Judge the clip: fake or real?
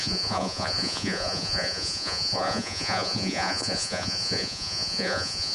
fake